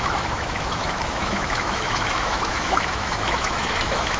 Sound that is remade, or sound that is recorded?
remade